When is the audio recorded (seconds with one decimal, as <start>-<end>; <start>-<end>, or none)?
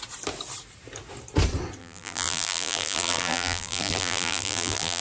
0.0-1.8